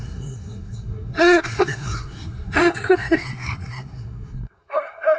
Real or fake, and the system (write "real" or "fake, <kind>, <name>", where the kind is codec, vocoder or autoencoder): fake, codec, SNAC